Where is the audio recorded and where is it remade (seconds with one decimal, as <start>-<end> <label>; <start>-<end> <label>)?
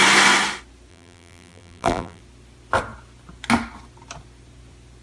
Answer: 0.0-0.9 recorded; 0.9-2.2 remade; 2.2-5.0 recorded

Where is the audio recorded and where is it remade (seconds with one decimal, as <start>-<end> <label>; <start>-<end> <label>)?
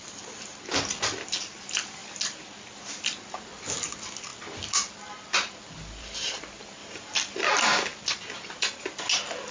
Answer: 0.0-6.8 recorded; 6.8-7.4 remade; 7.4-9.5 recorded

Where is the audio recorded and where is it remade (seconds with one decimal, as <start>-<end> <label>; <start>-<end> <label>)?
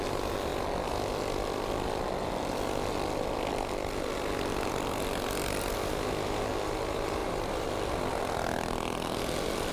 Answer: 0.0-7.2 recorded; 7.2-7.7 remade; 7.7-9.7 recorded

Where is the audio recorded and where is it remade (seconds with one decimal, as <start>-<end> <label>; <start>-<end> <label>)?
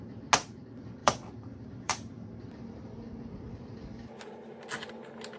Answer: 0.0-1.0 recorded; 1.0-4.2 remade; 4.2-5.4 recorded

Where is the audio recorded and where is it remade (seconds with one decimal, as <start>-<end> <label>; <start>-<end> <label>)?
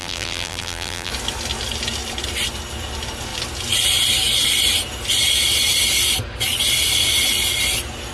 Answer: 0.0-1.1 remade; 1.1-8.1 recorded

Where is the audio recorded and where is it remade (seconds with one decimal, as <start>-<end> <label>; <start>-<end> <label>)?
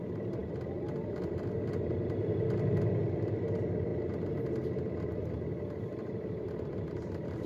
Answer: 0.0-3.9 remade; 3.9-4.4 recorded; 4.4-7.5 remade